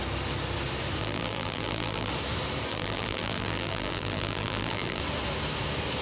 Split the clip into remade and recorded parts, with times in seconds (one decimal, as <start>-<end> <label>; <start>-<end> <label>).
0.0-1.0 recorded; 1.0-2.1 remade; 2.1-2.7 recorded; 2.7-5.0 remade; 5.0-6.0 recorded